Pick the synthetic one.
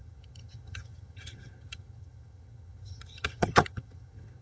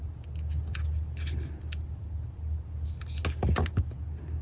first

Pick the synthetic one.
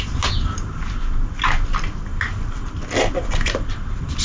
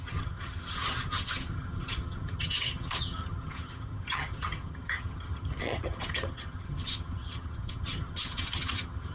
second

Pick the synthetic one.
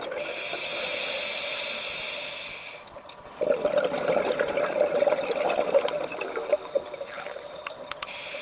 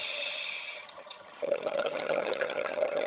second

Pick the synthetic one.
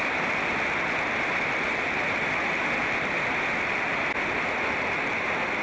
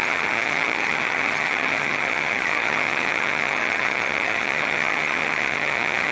second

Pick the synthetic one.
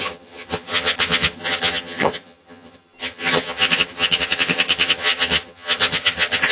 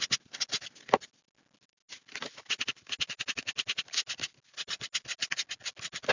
first